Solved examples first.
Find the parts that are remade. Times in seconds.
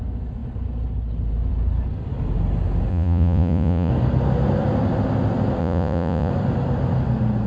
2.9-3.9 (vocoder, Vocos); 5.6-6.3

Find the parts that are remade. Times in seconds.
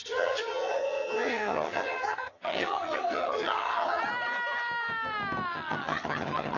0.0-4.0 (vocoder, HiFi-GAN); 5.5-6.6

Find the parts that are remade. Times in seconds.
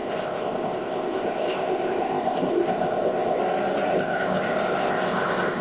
0.0-3.4 (codec, ZipCodec); 3.9-5.6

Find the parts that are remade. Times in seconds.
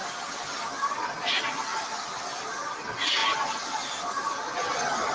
none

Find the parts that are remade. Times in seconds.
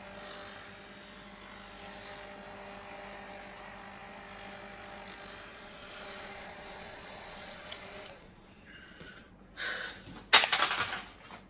5.5-9.3 (vocoder, Vocos)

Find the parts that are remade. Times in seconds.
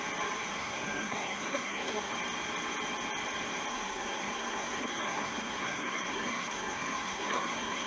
0.5-2.1 (codec, SNAC); 3.7-7.9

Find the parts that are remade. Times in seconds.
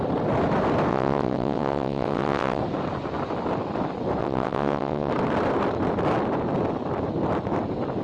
0.9-2.6 (vocoder, WaveNeXt); 4.2-5.1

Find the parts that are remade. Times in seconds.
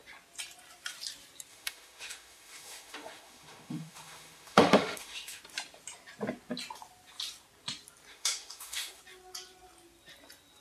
1.5-5.4 (autoencoder, DAC-VAE); 8.1-9.0